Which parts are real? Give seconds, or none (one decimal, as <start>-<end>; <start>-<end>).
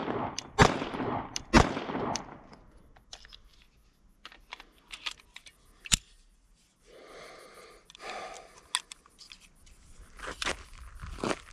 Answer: 0.0-11.5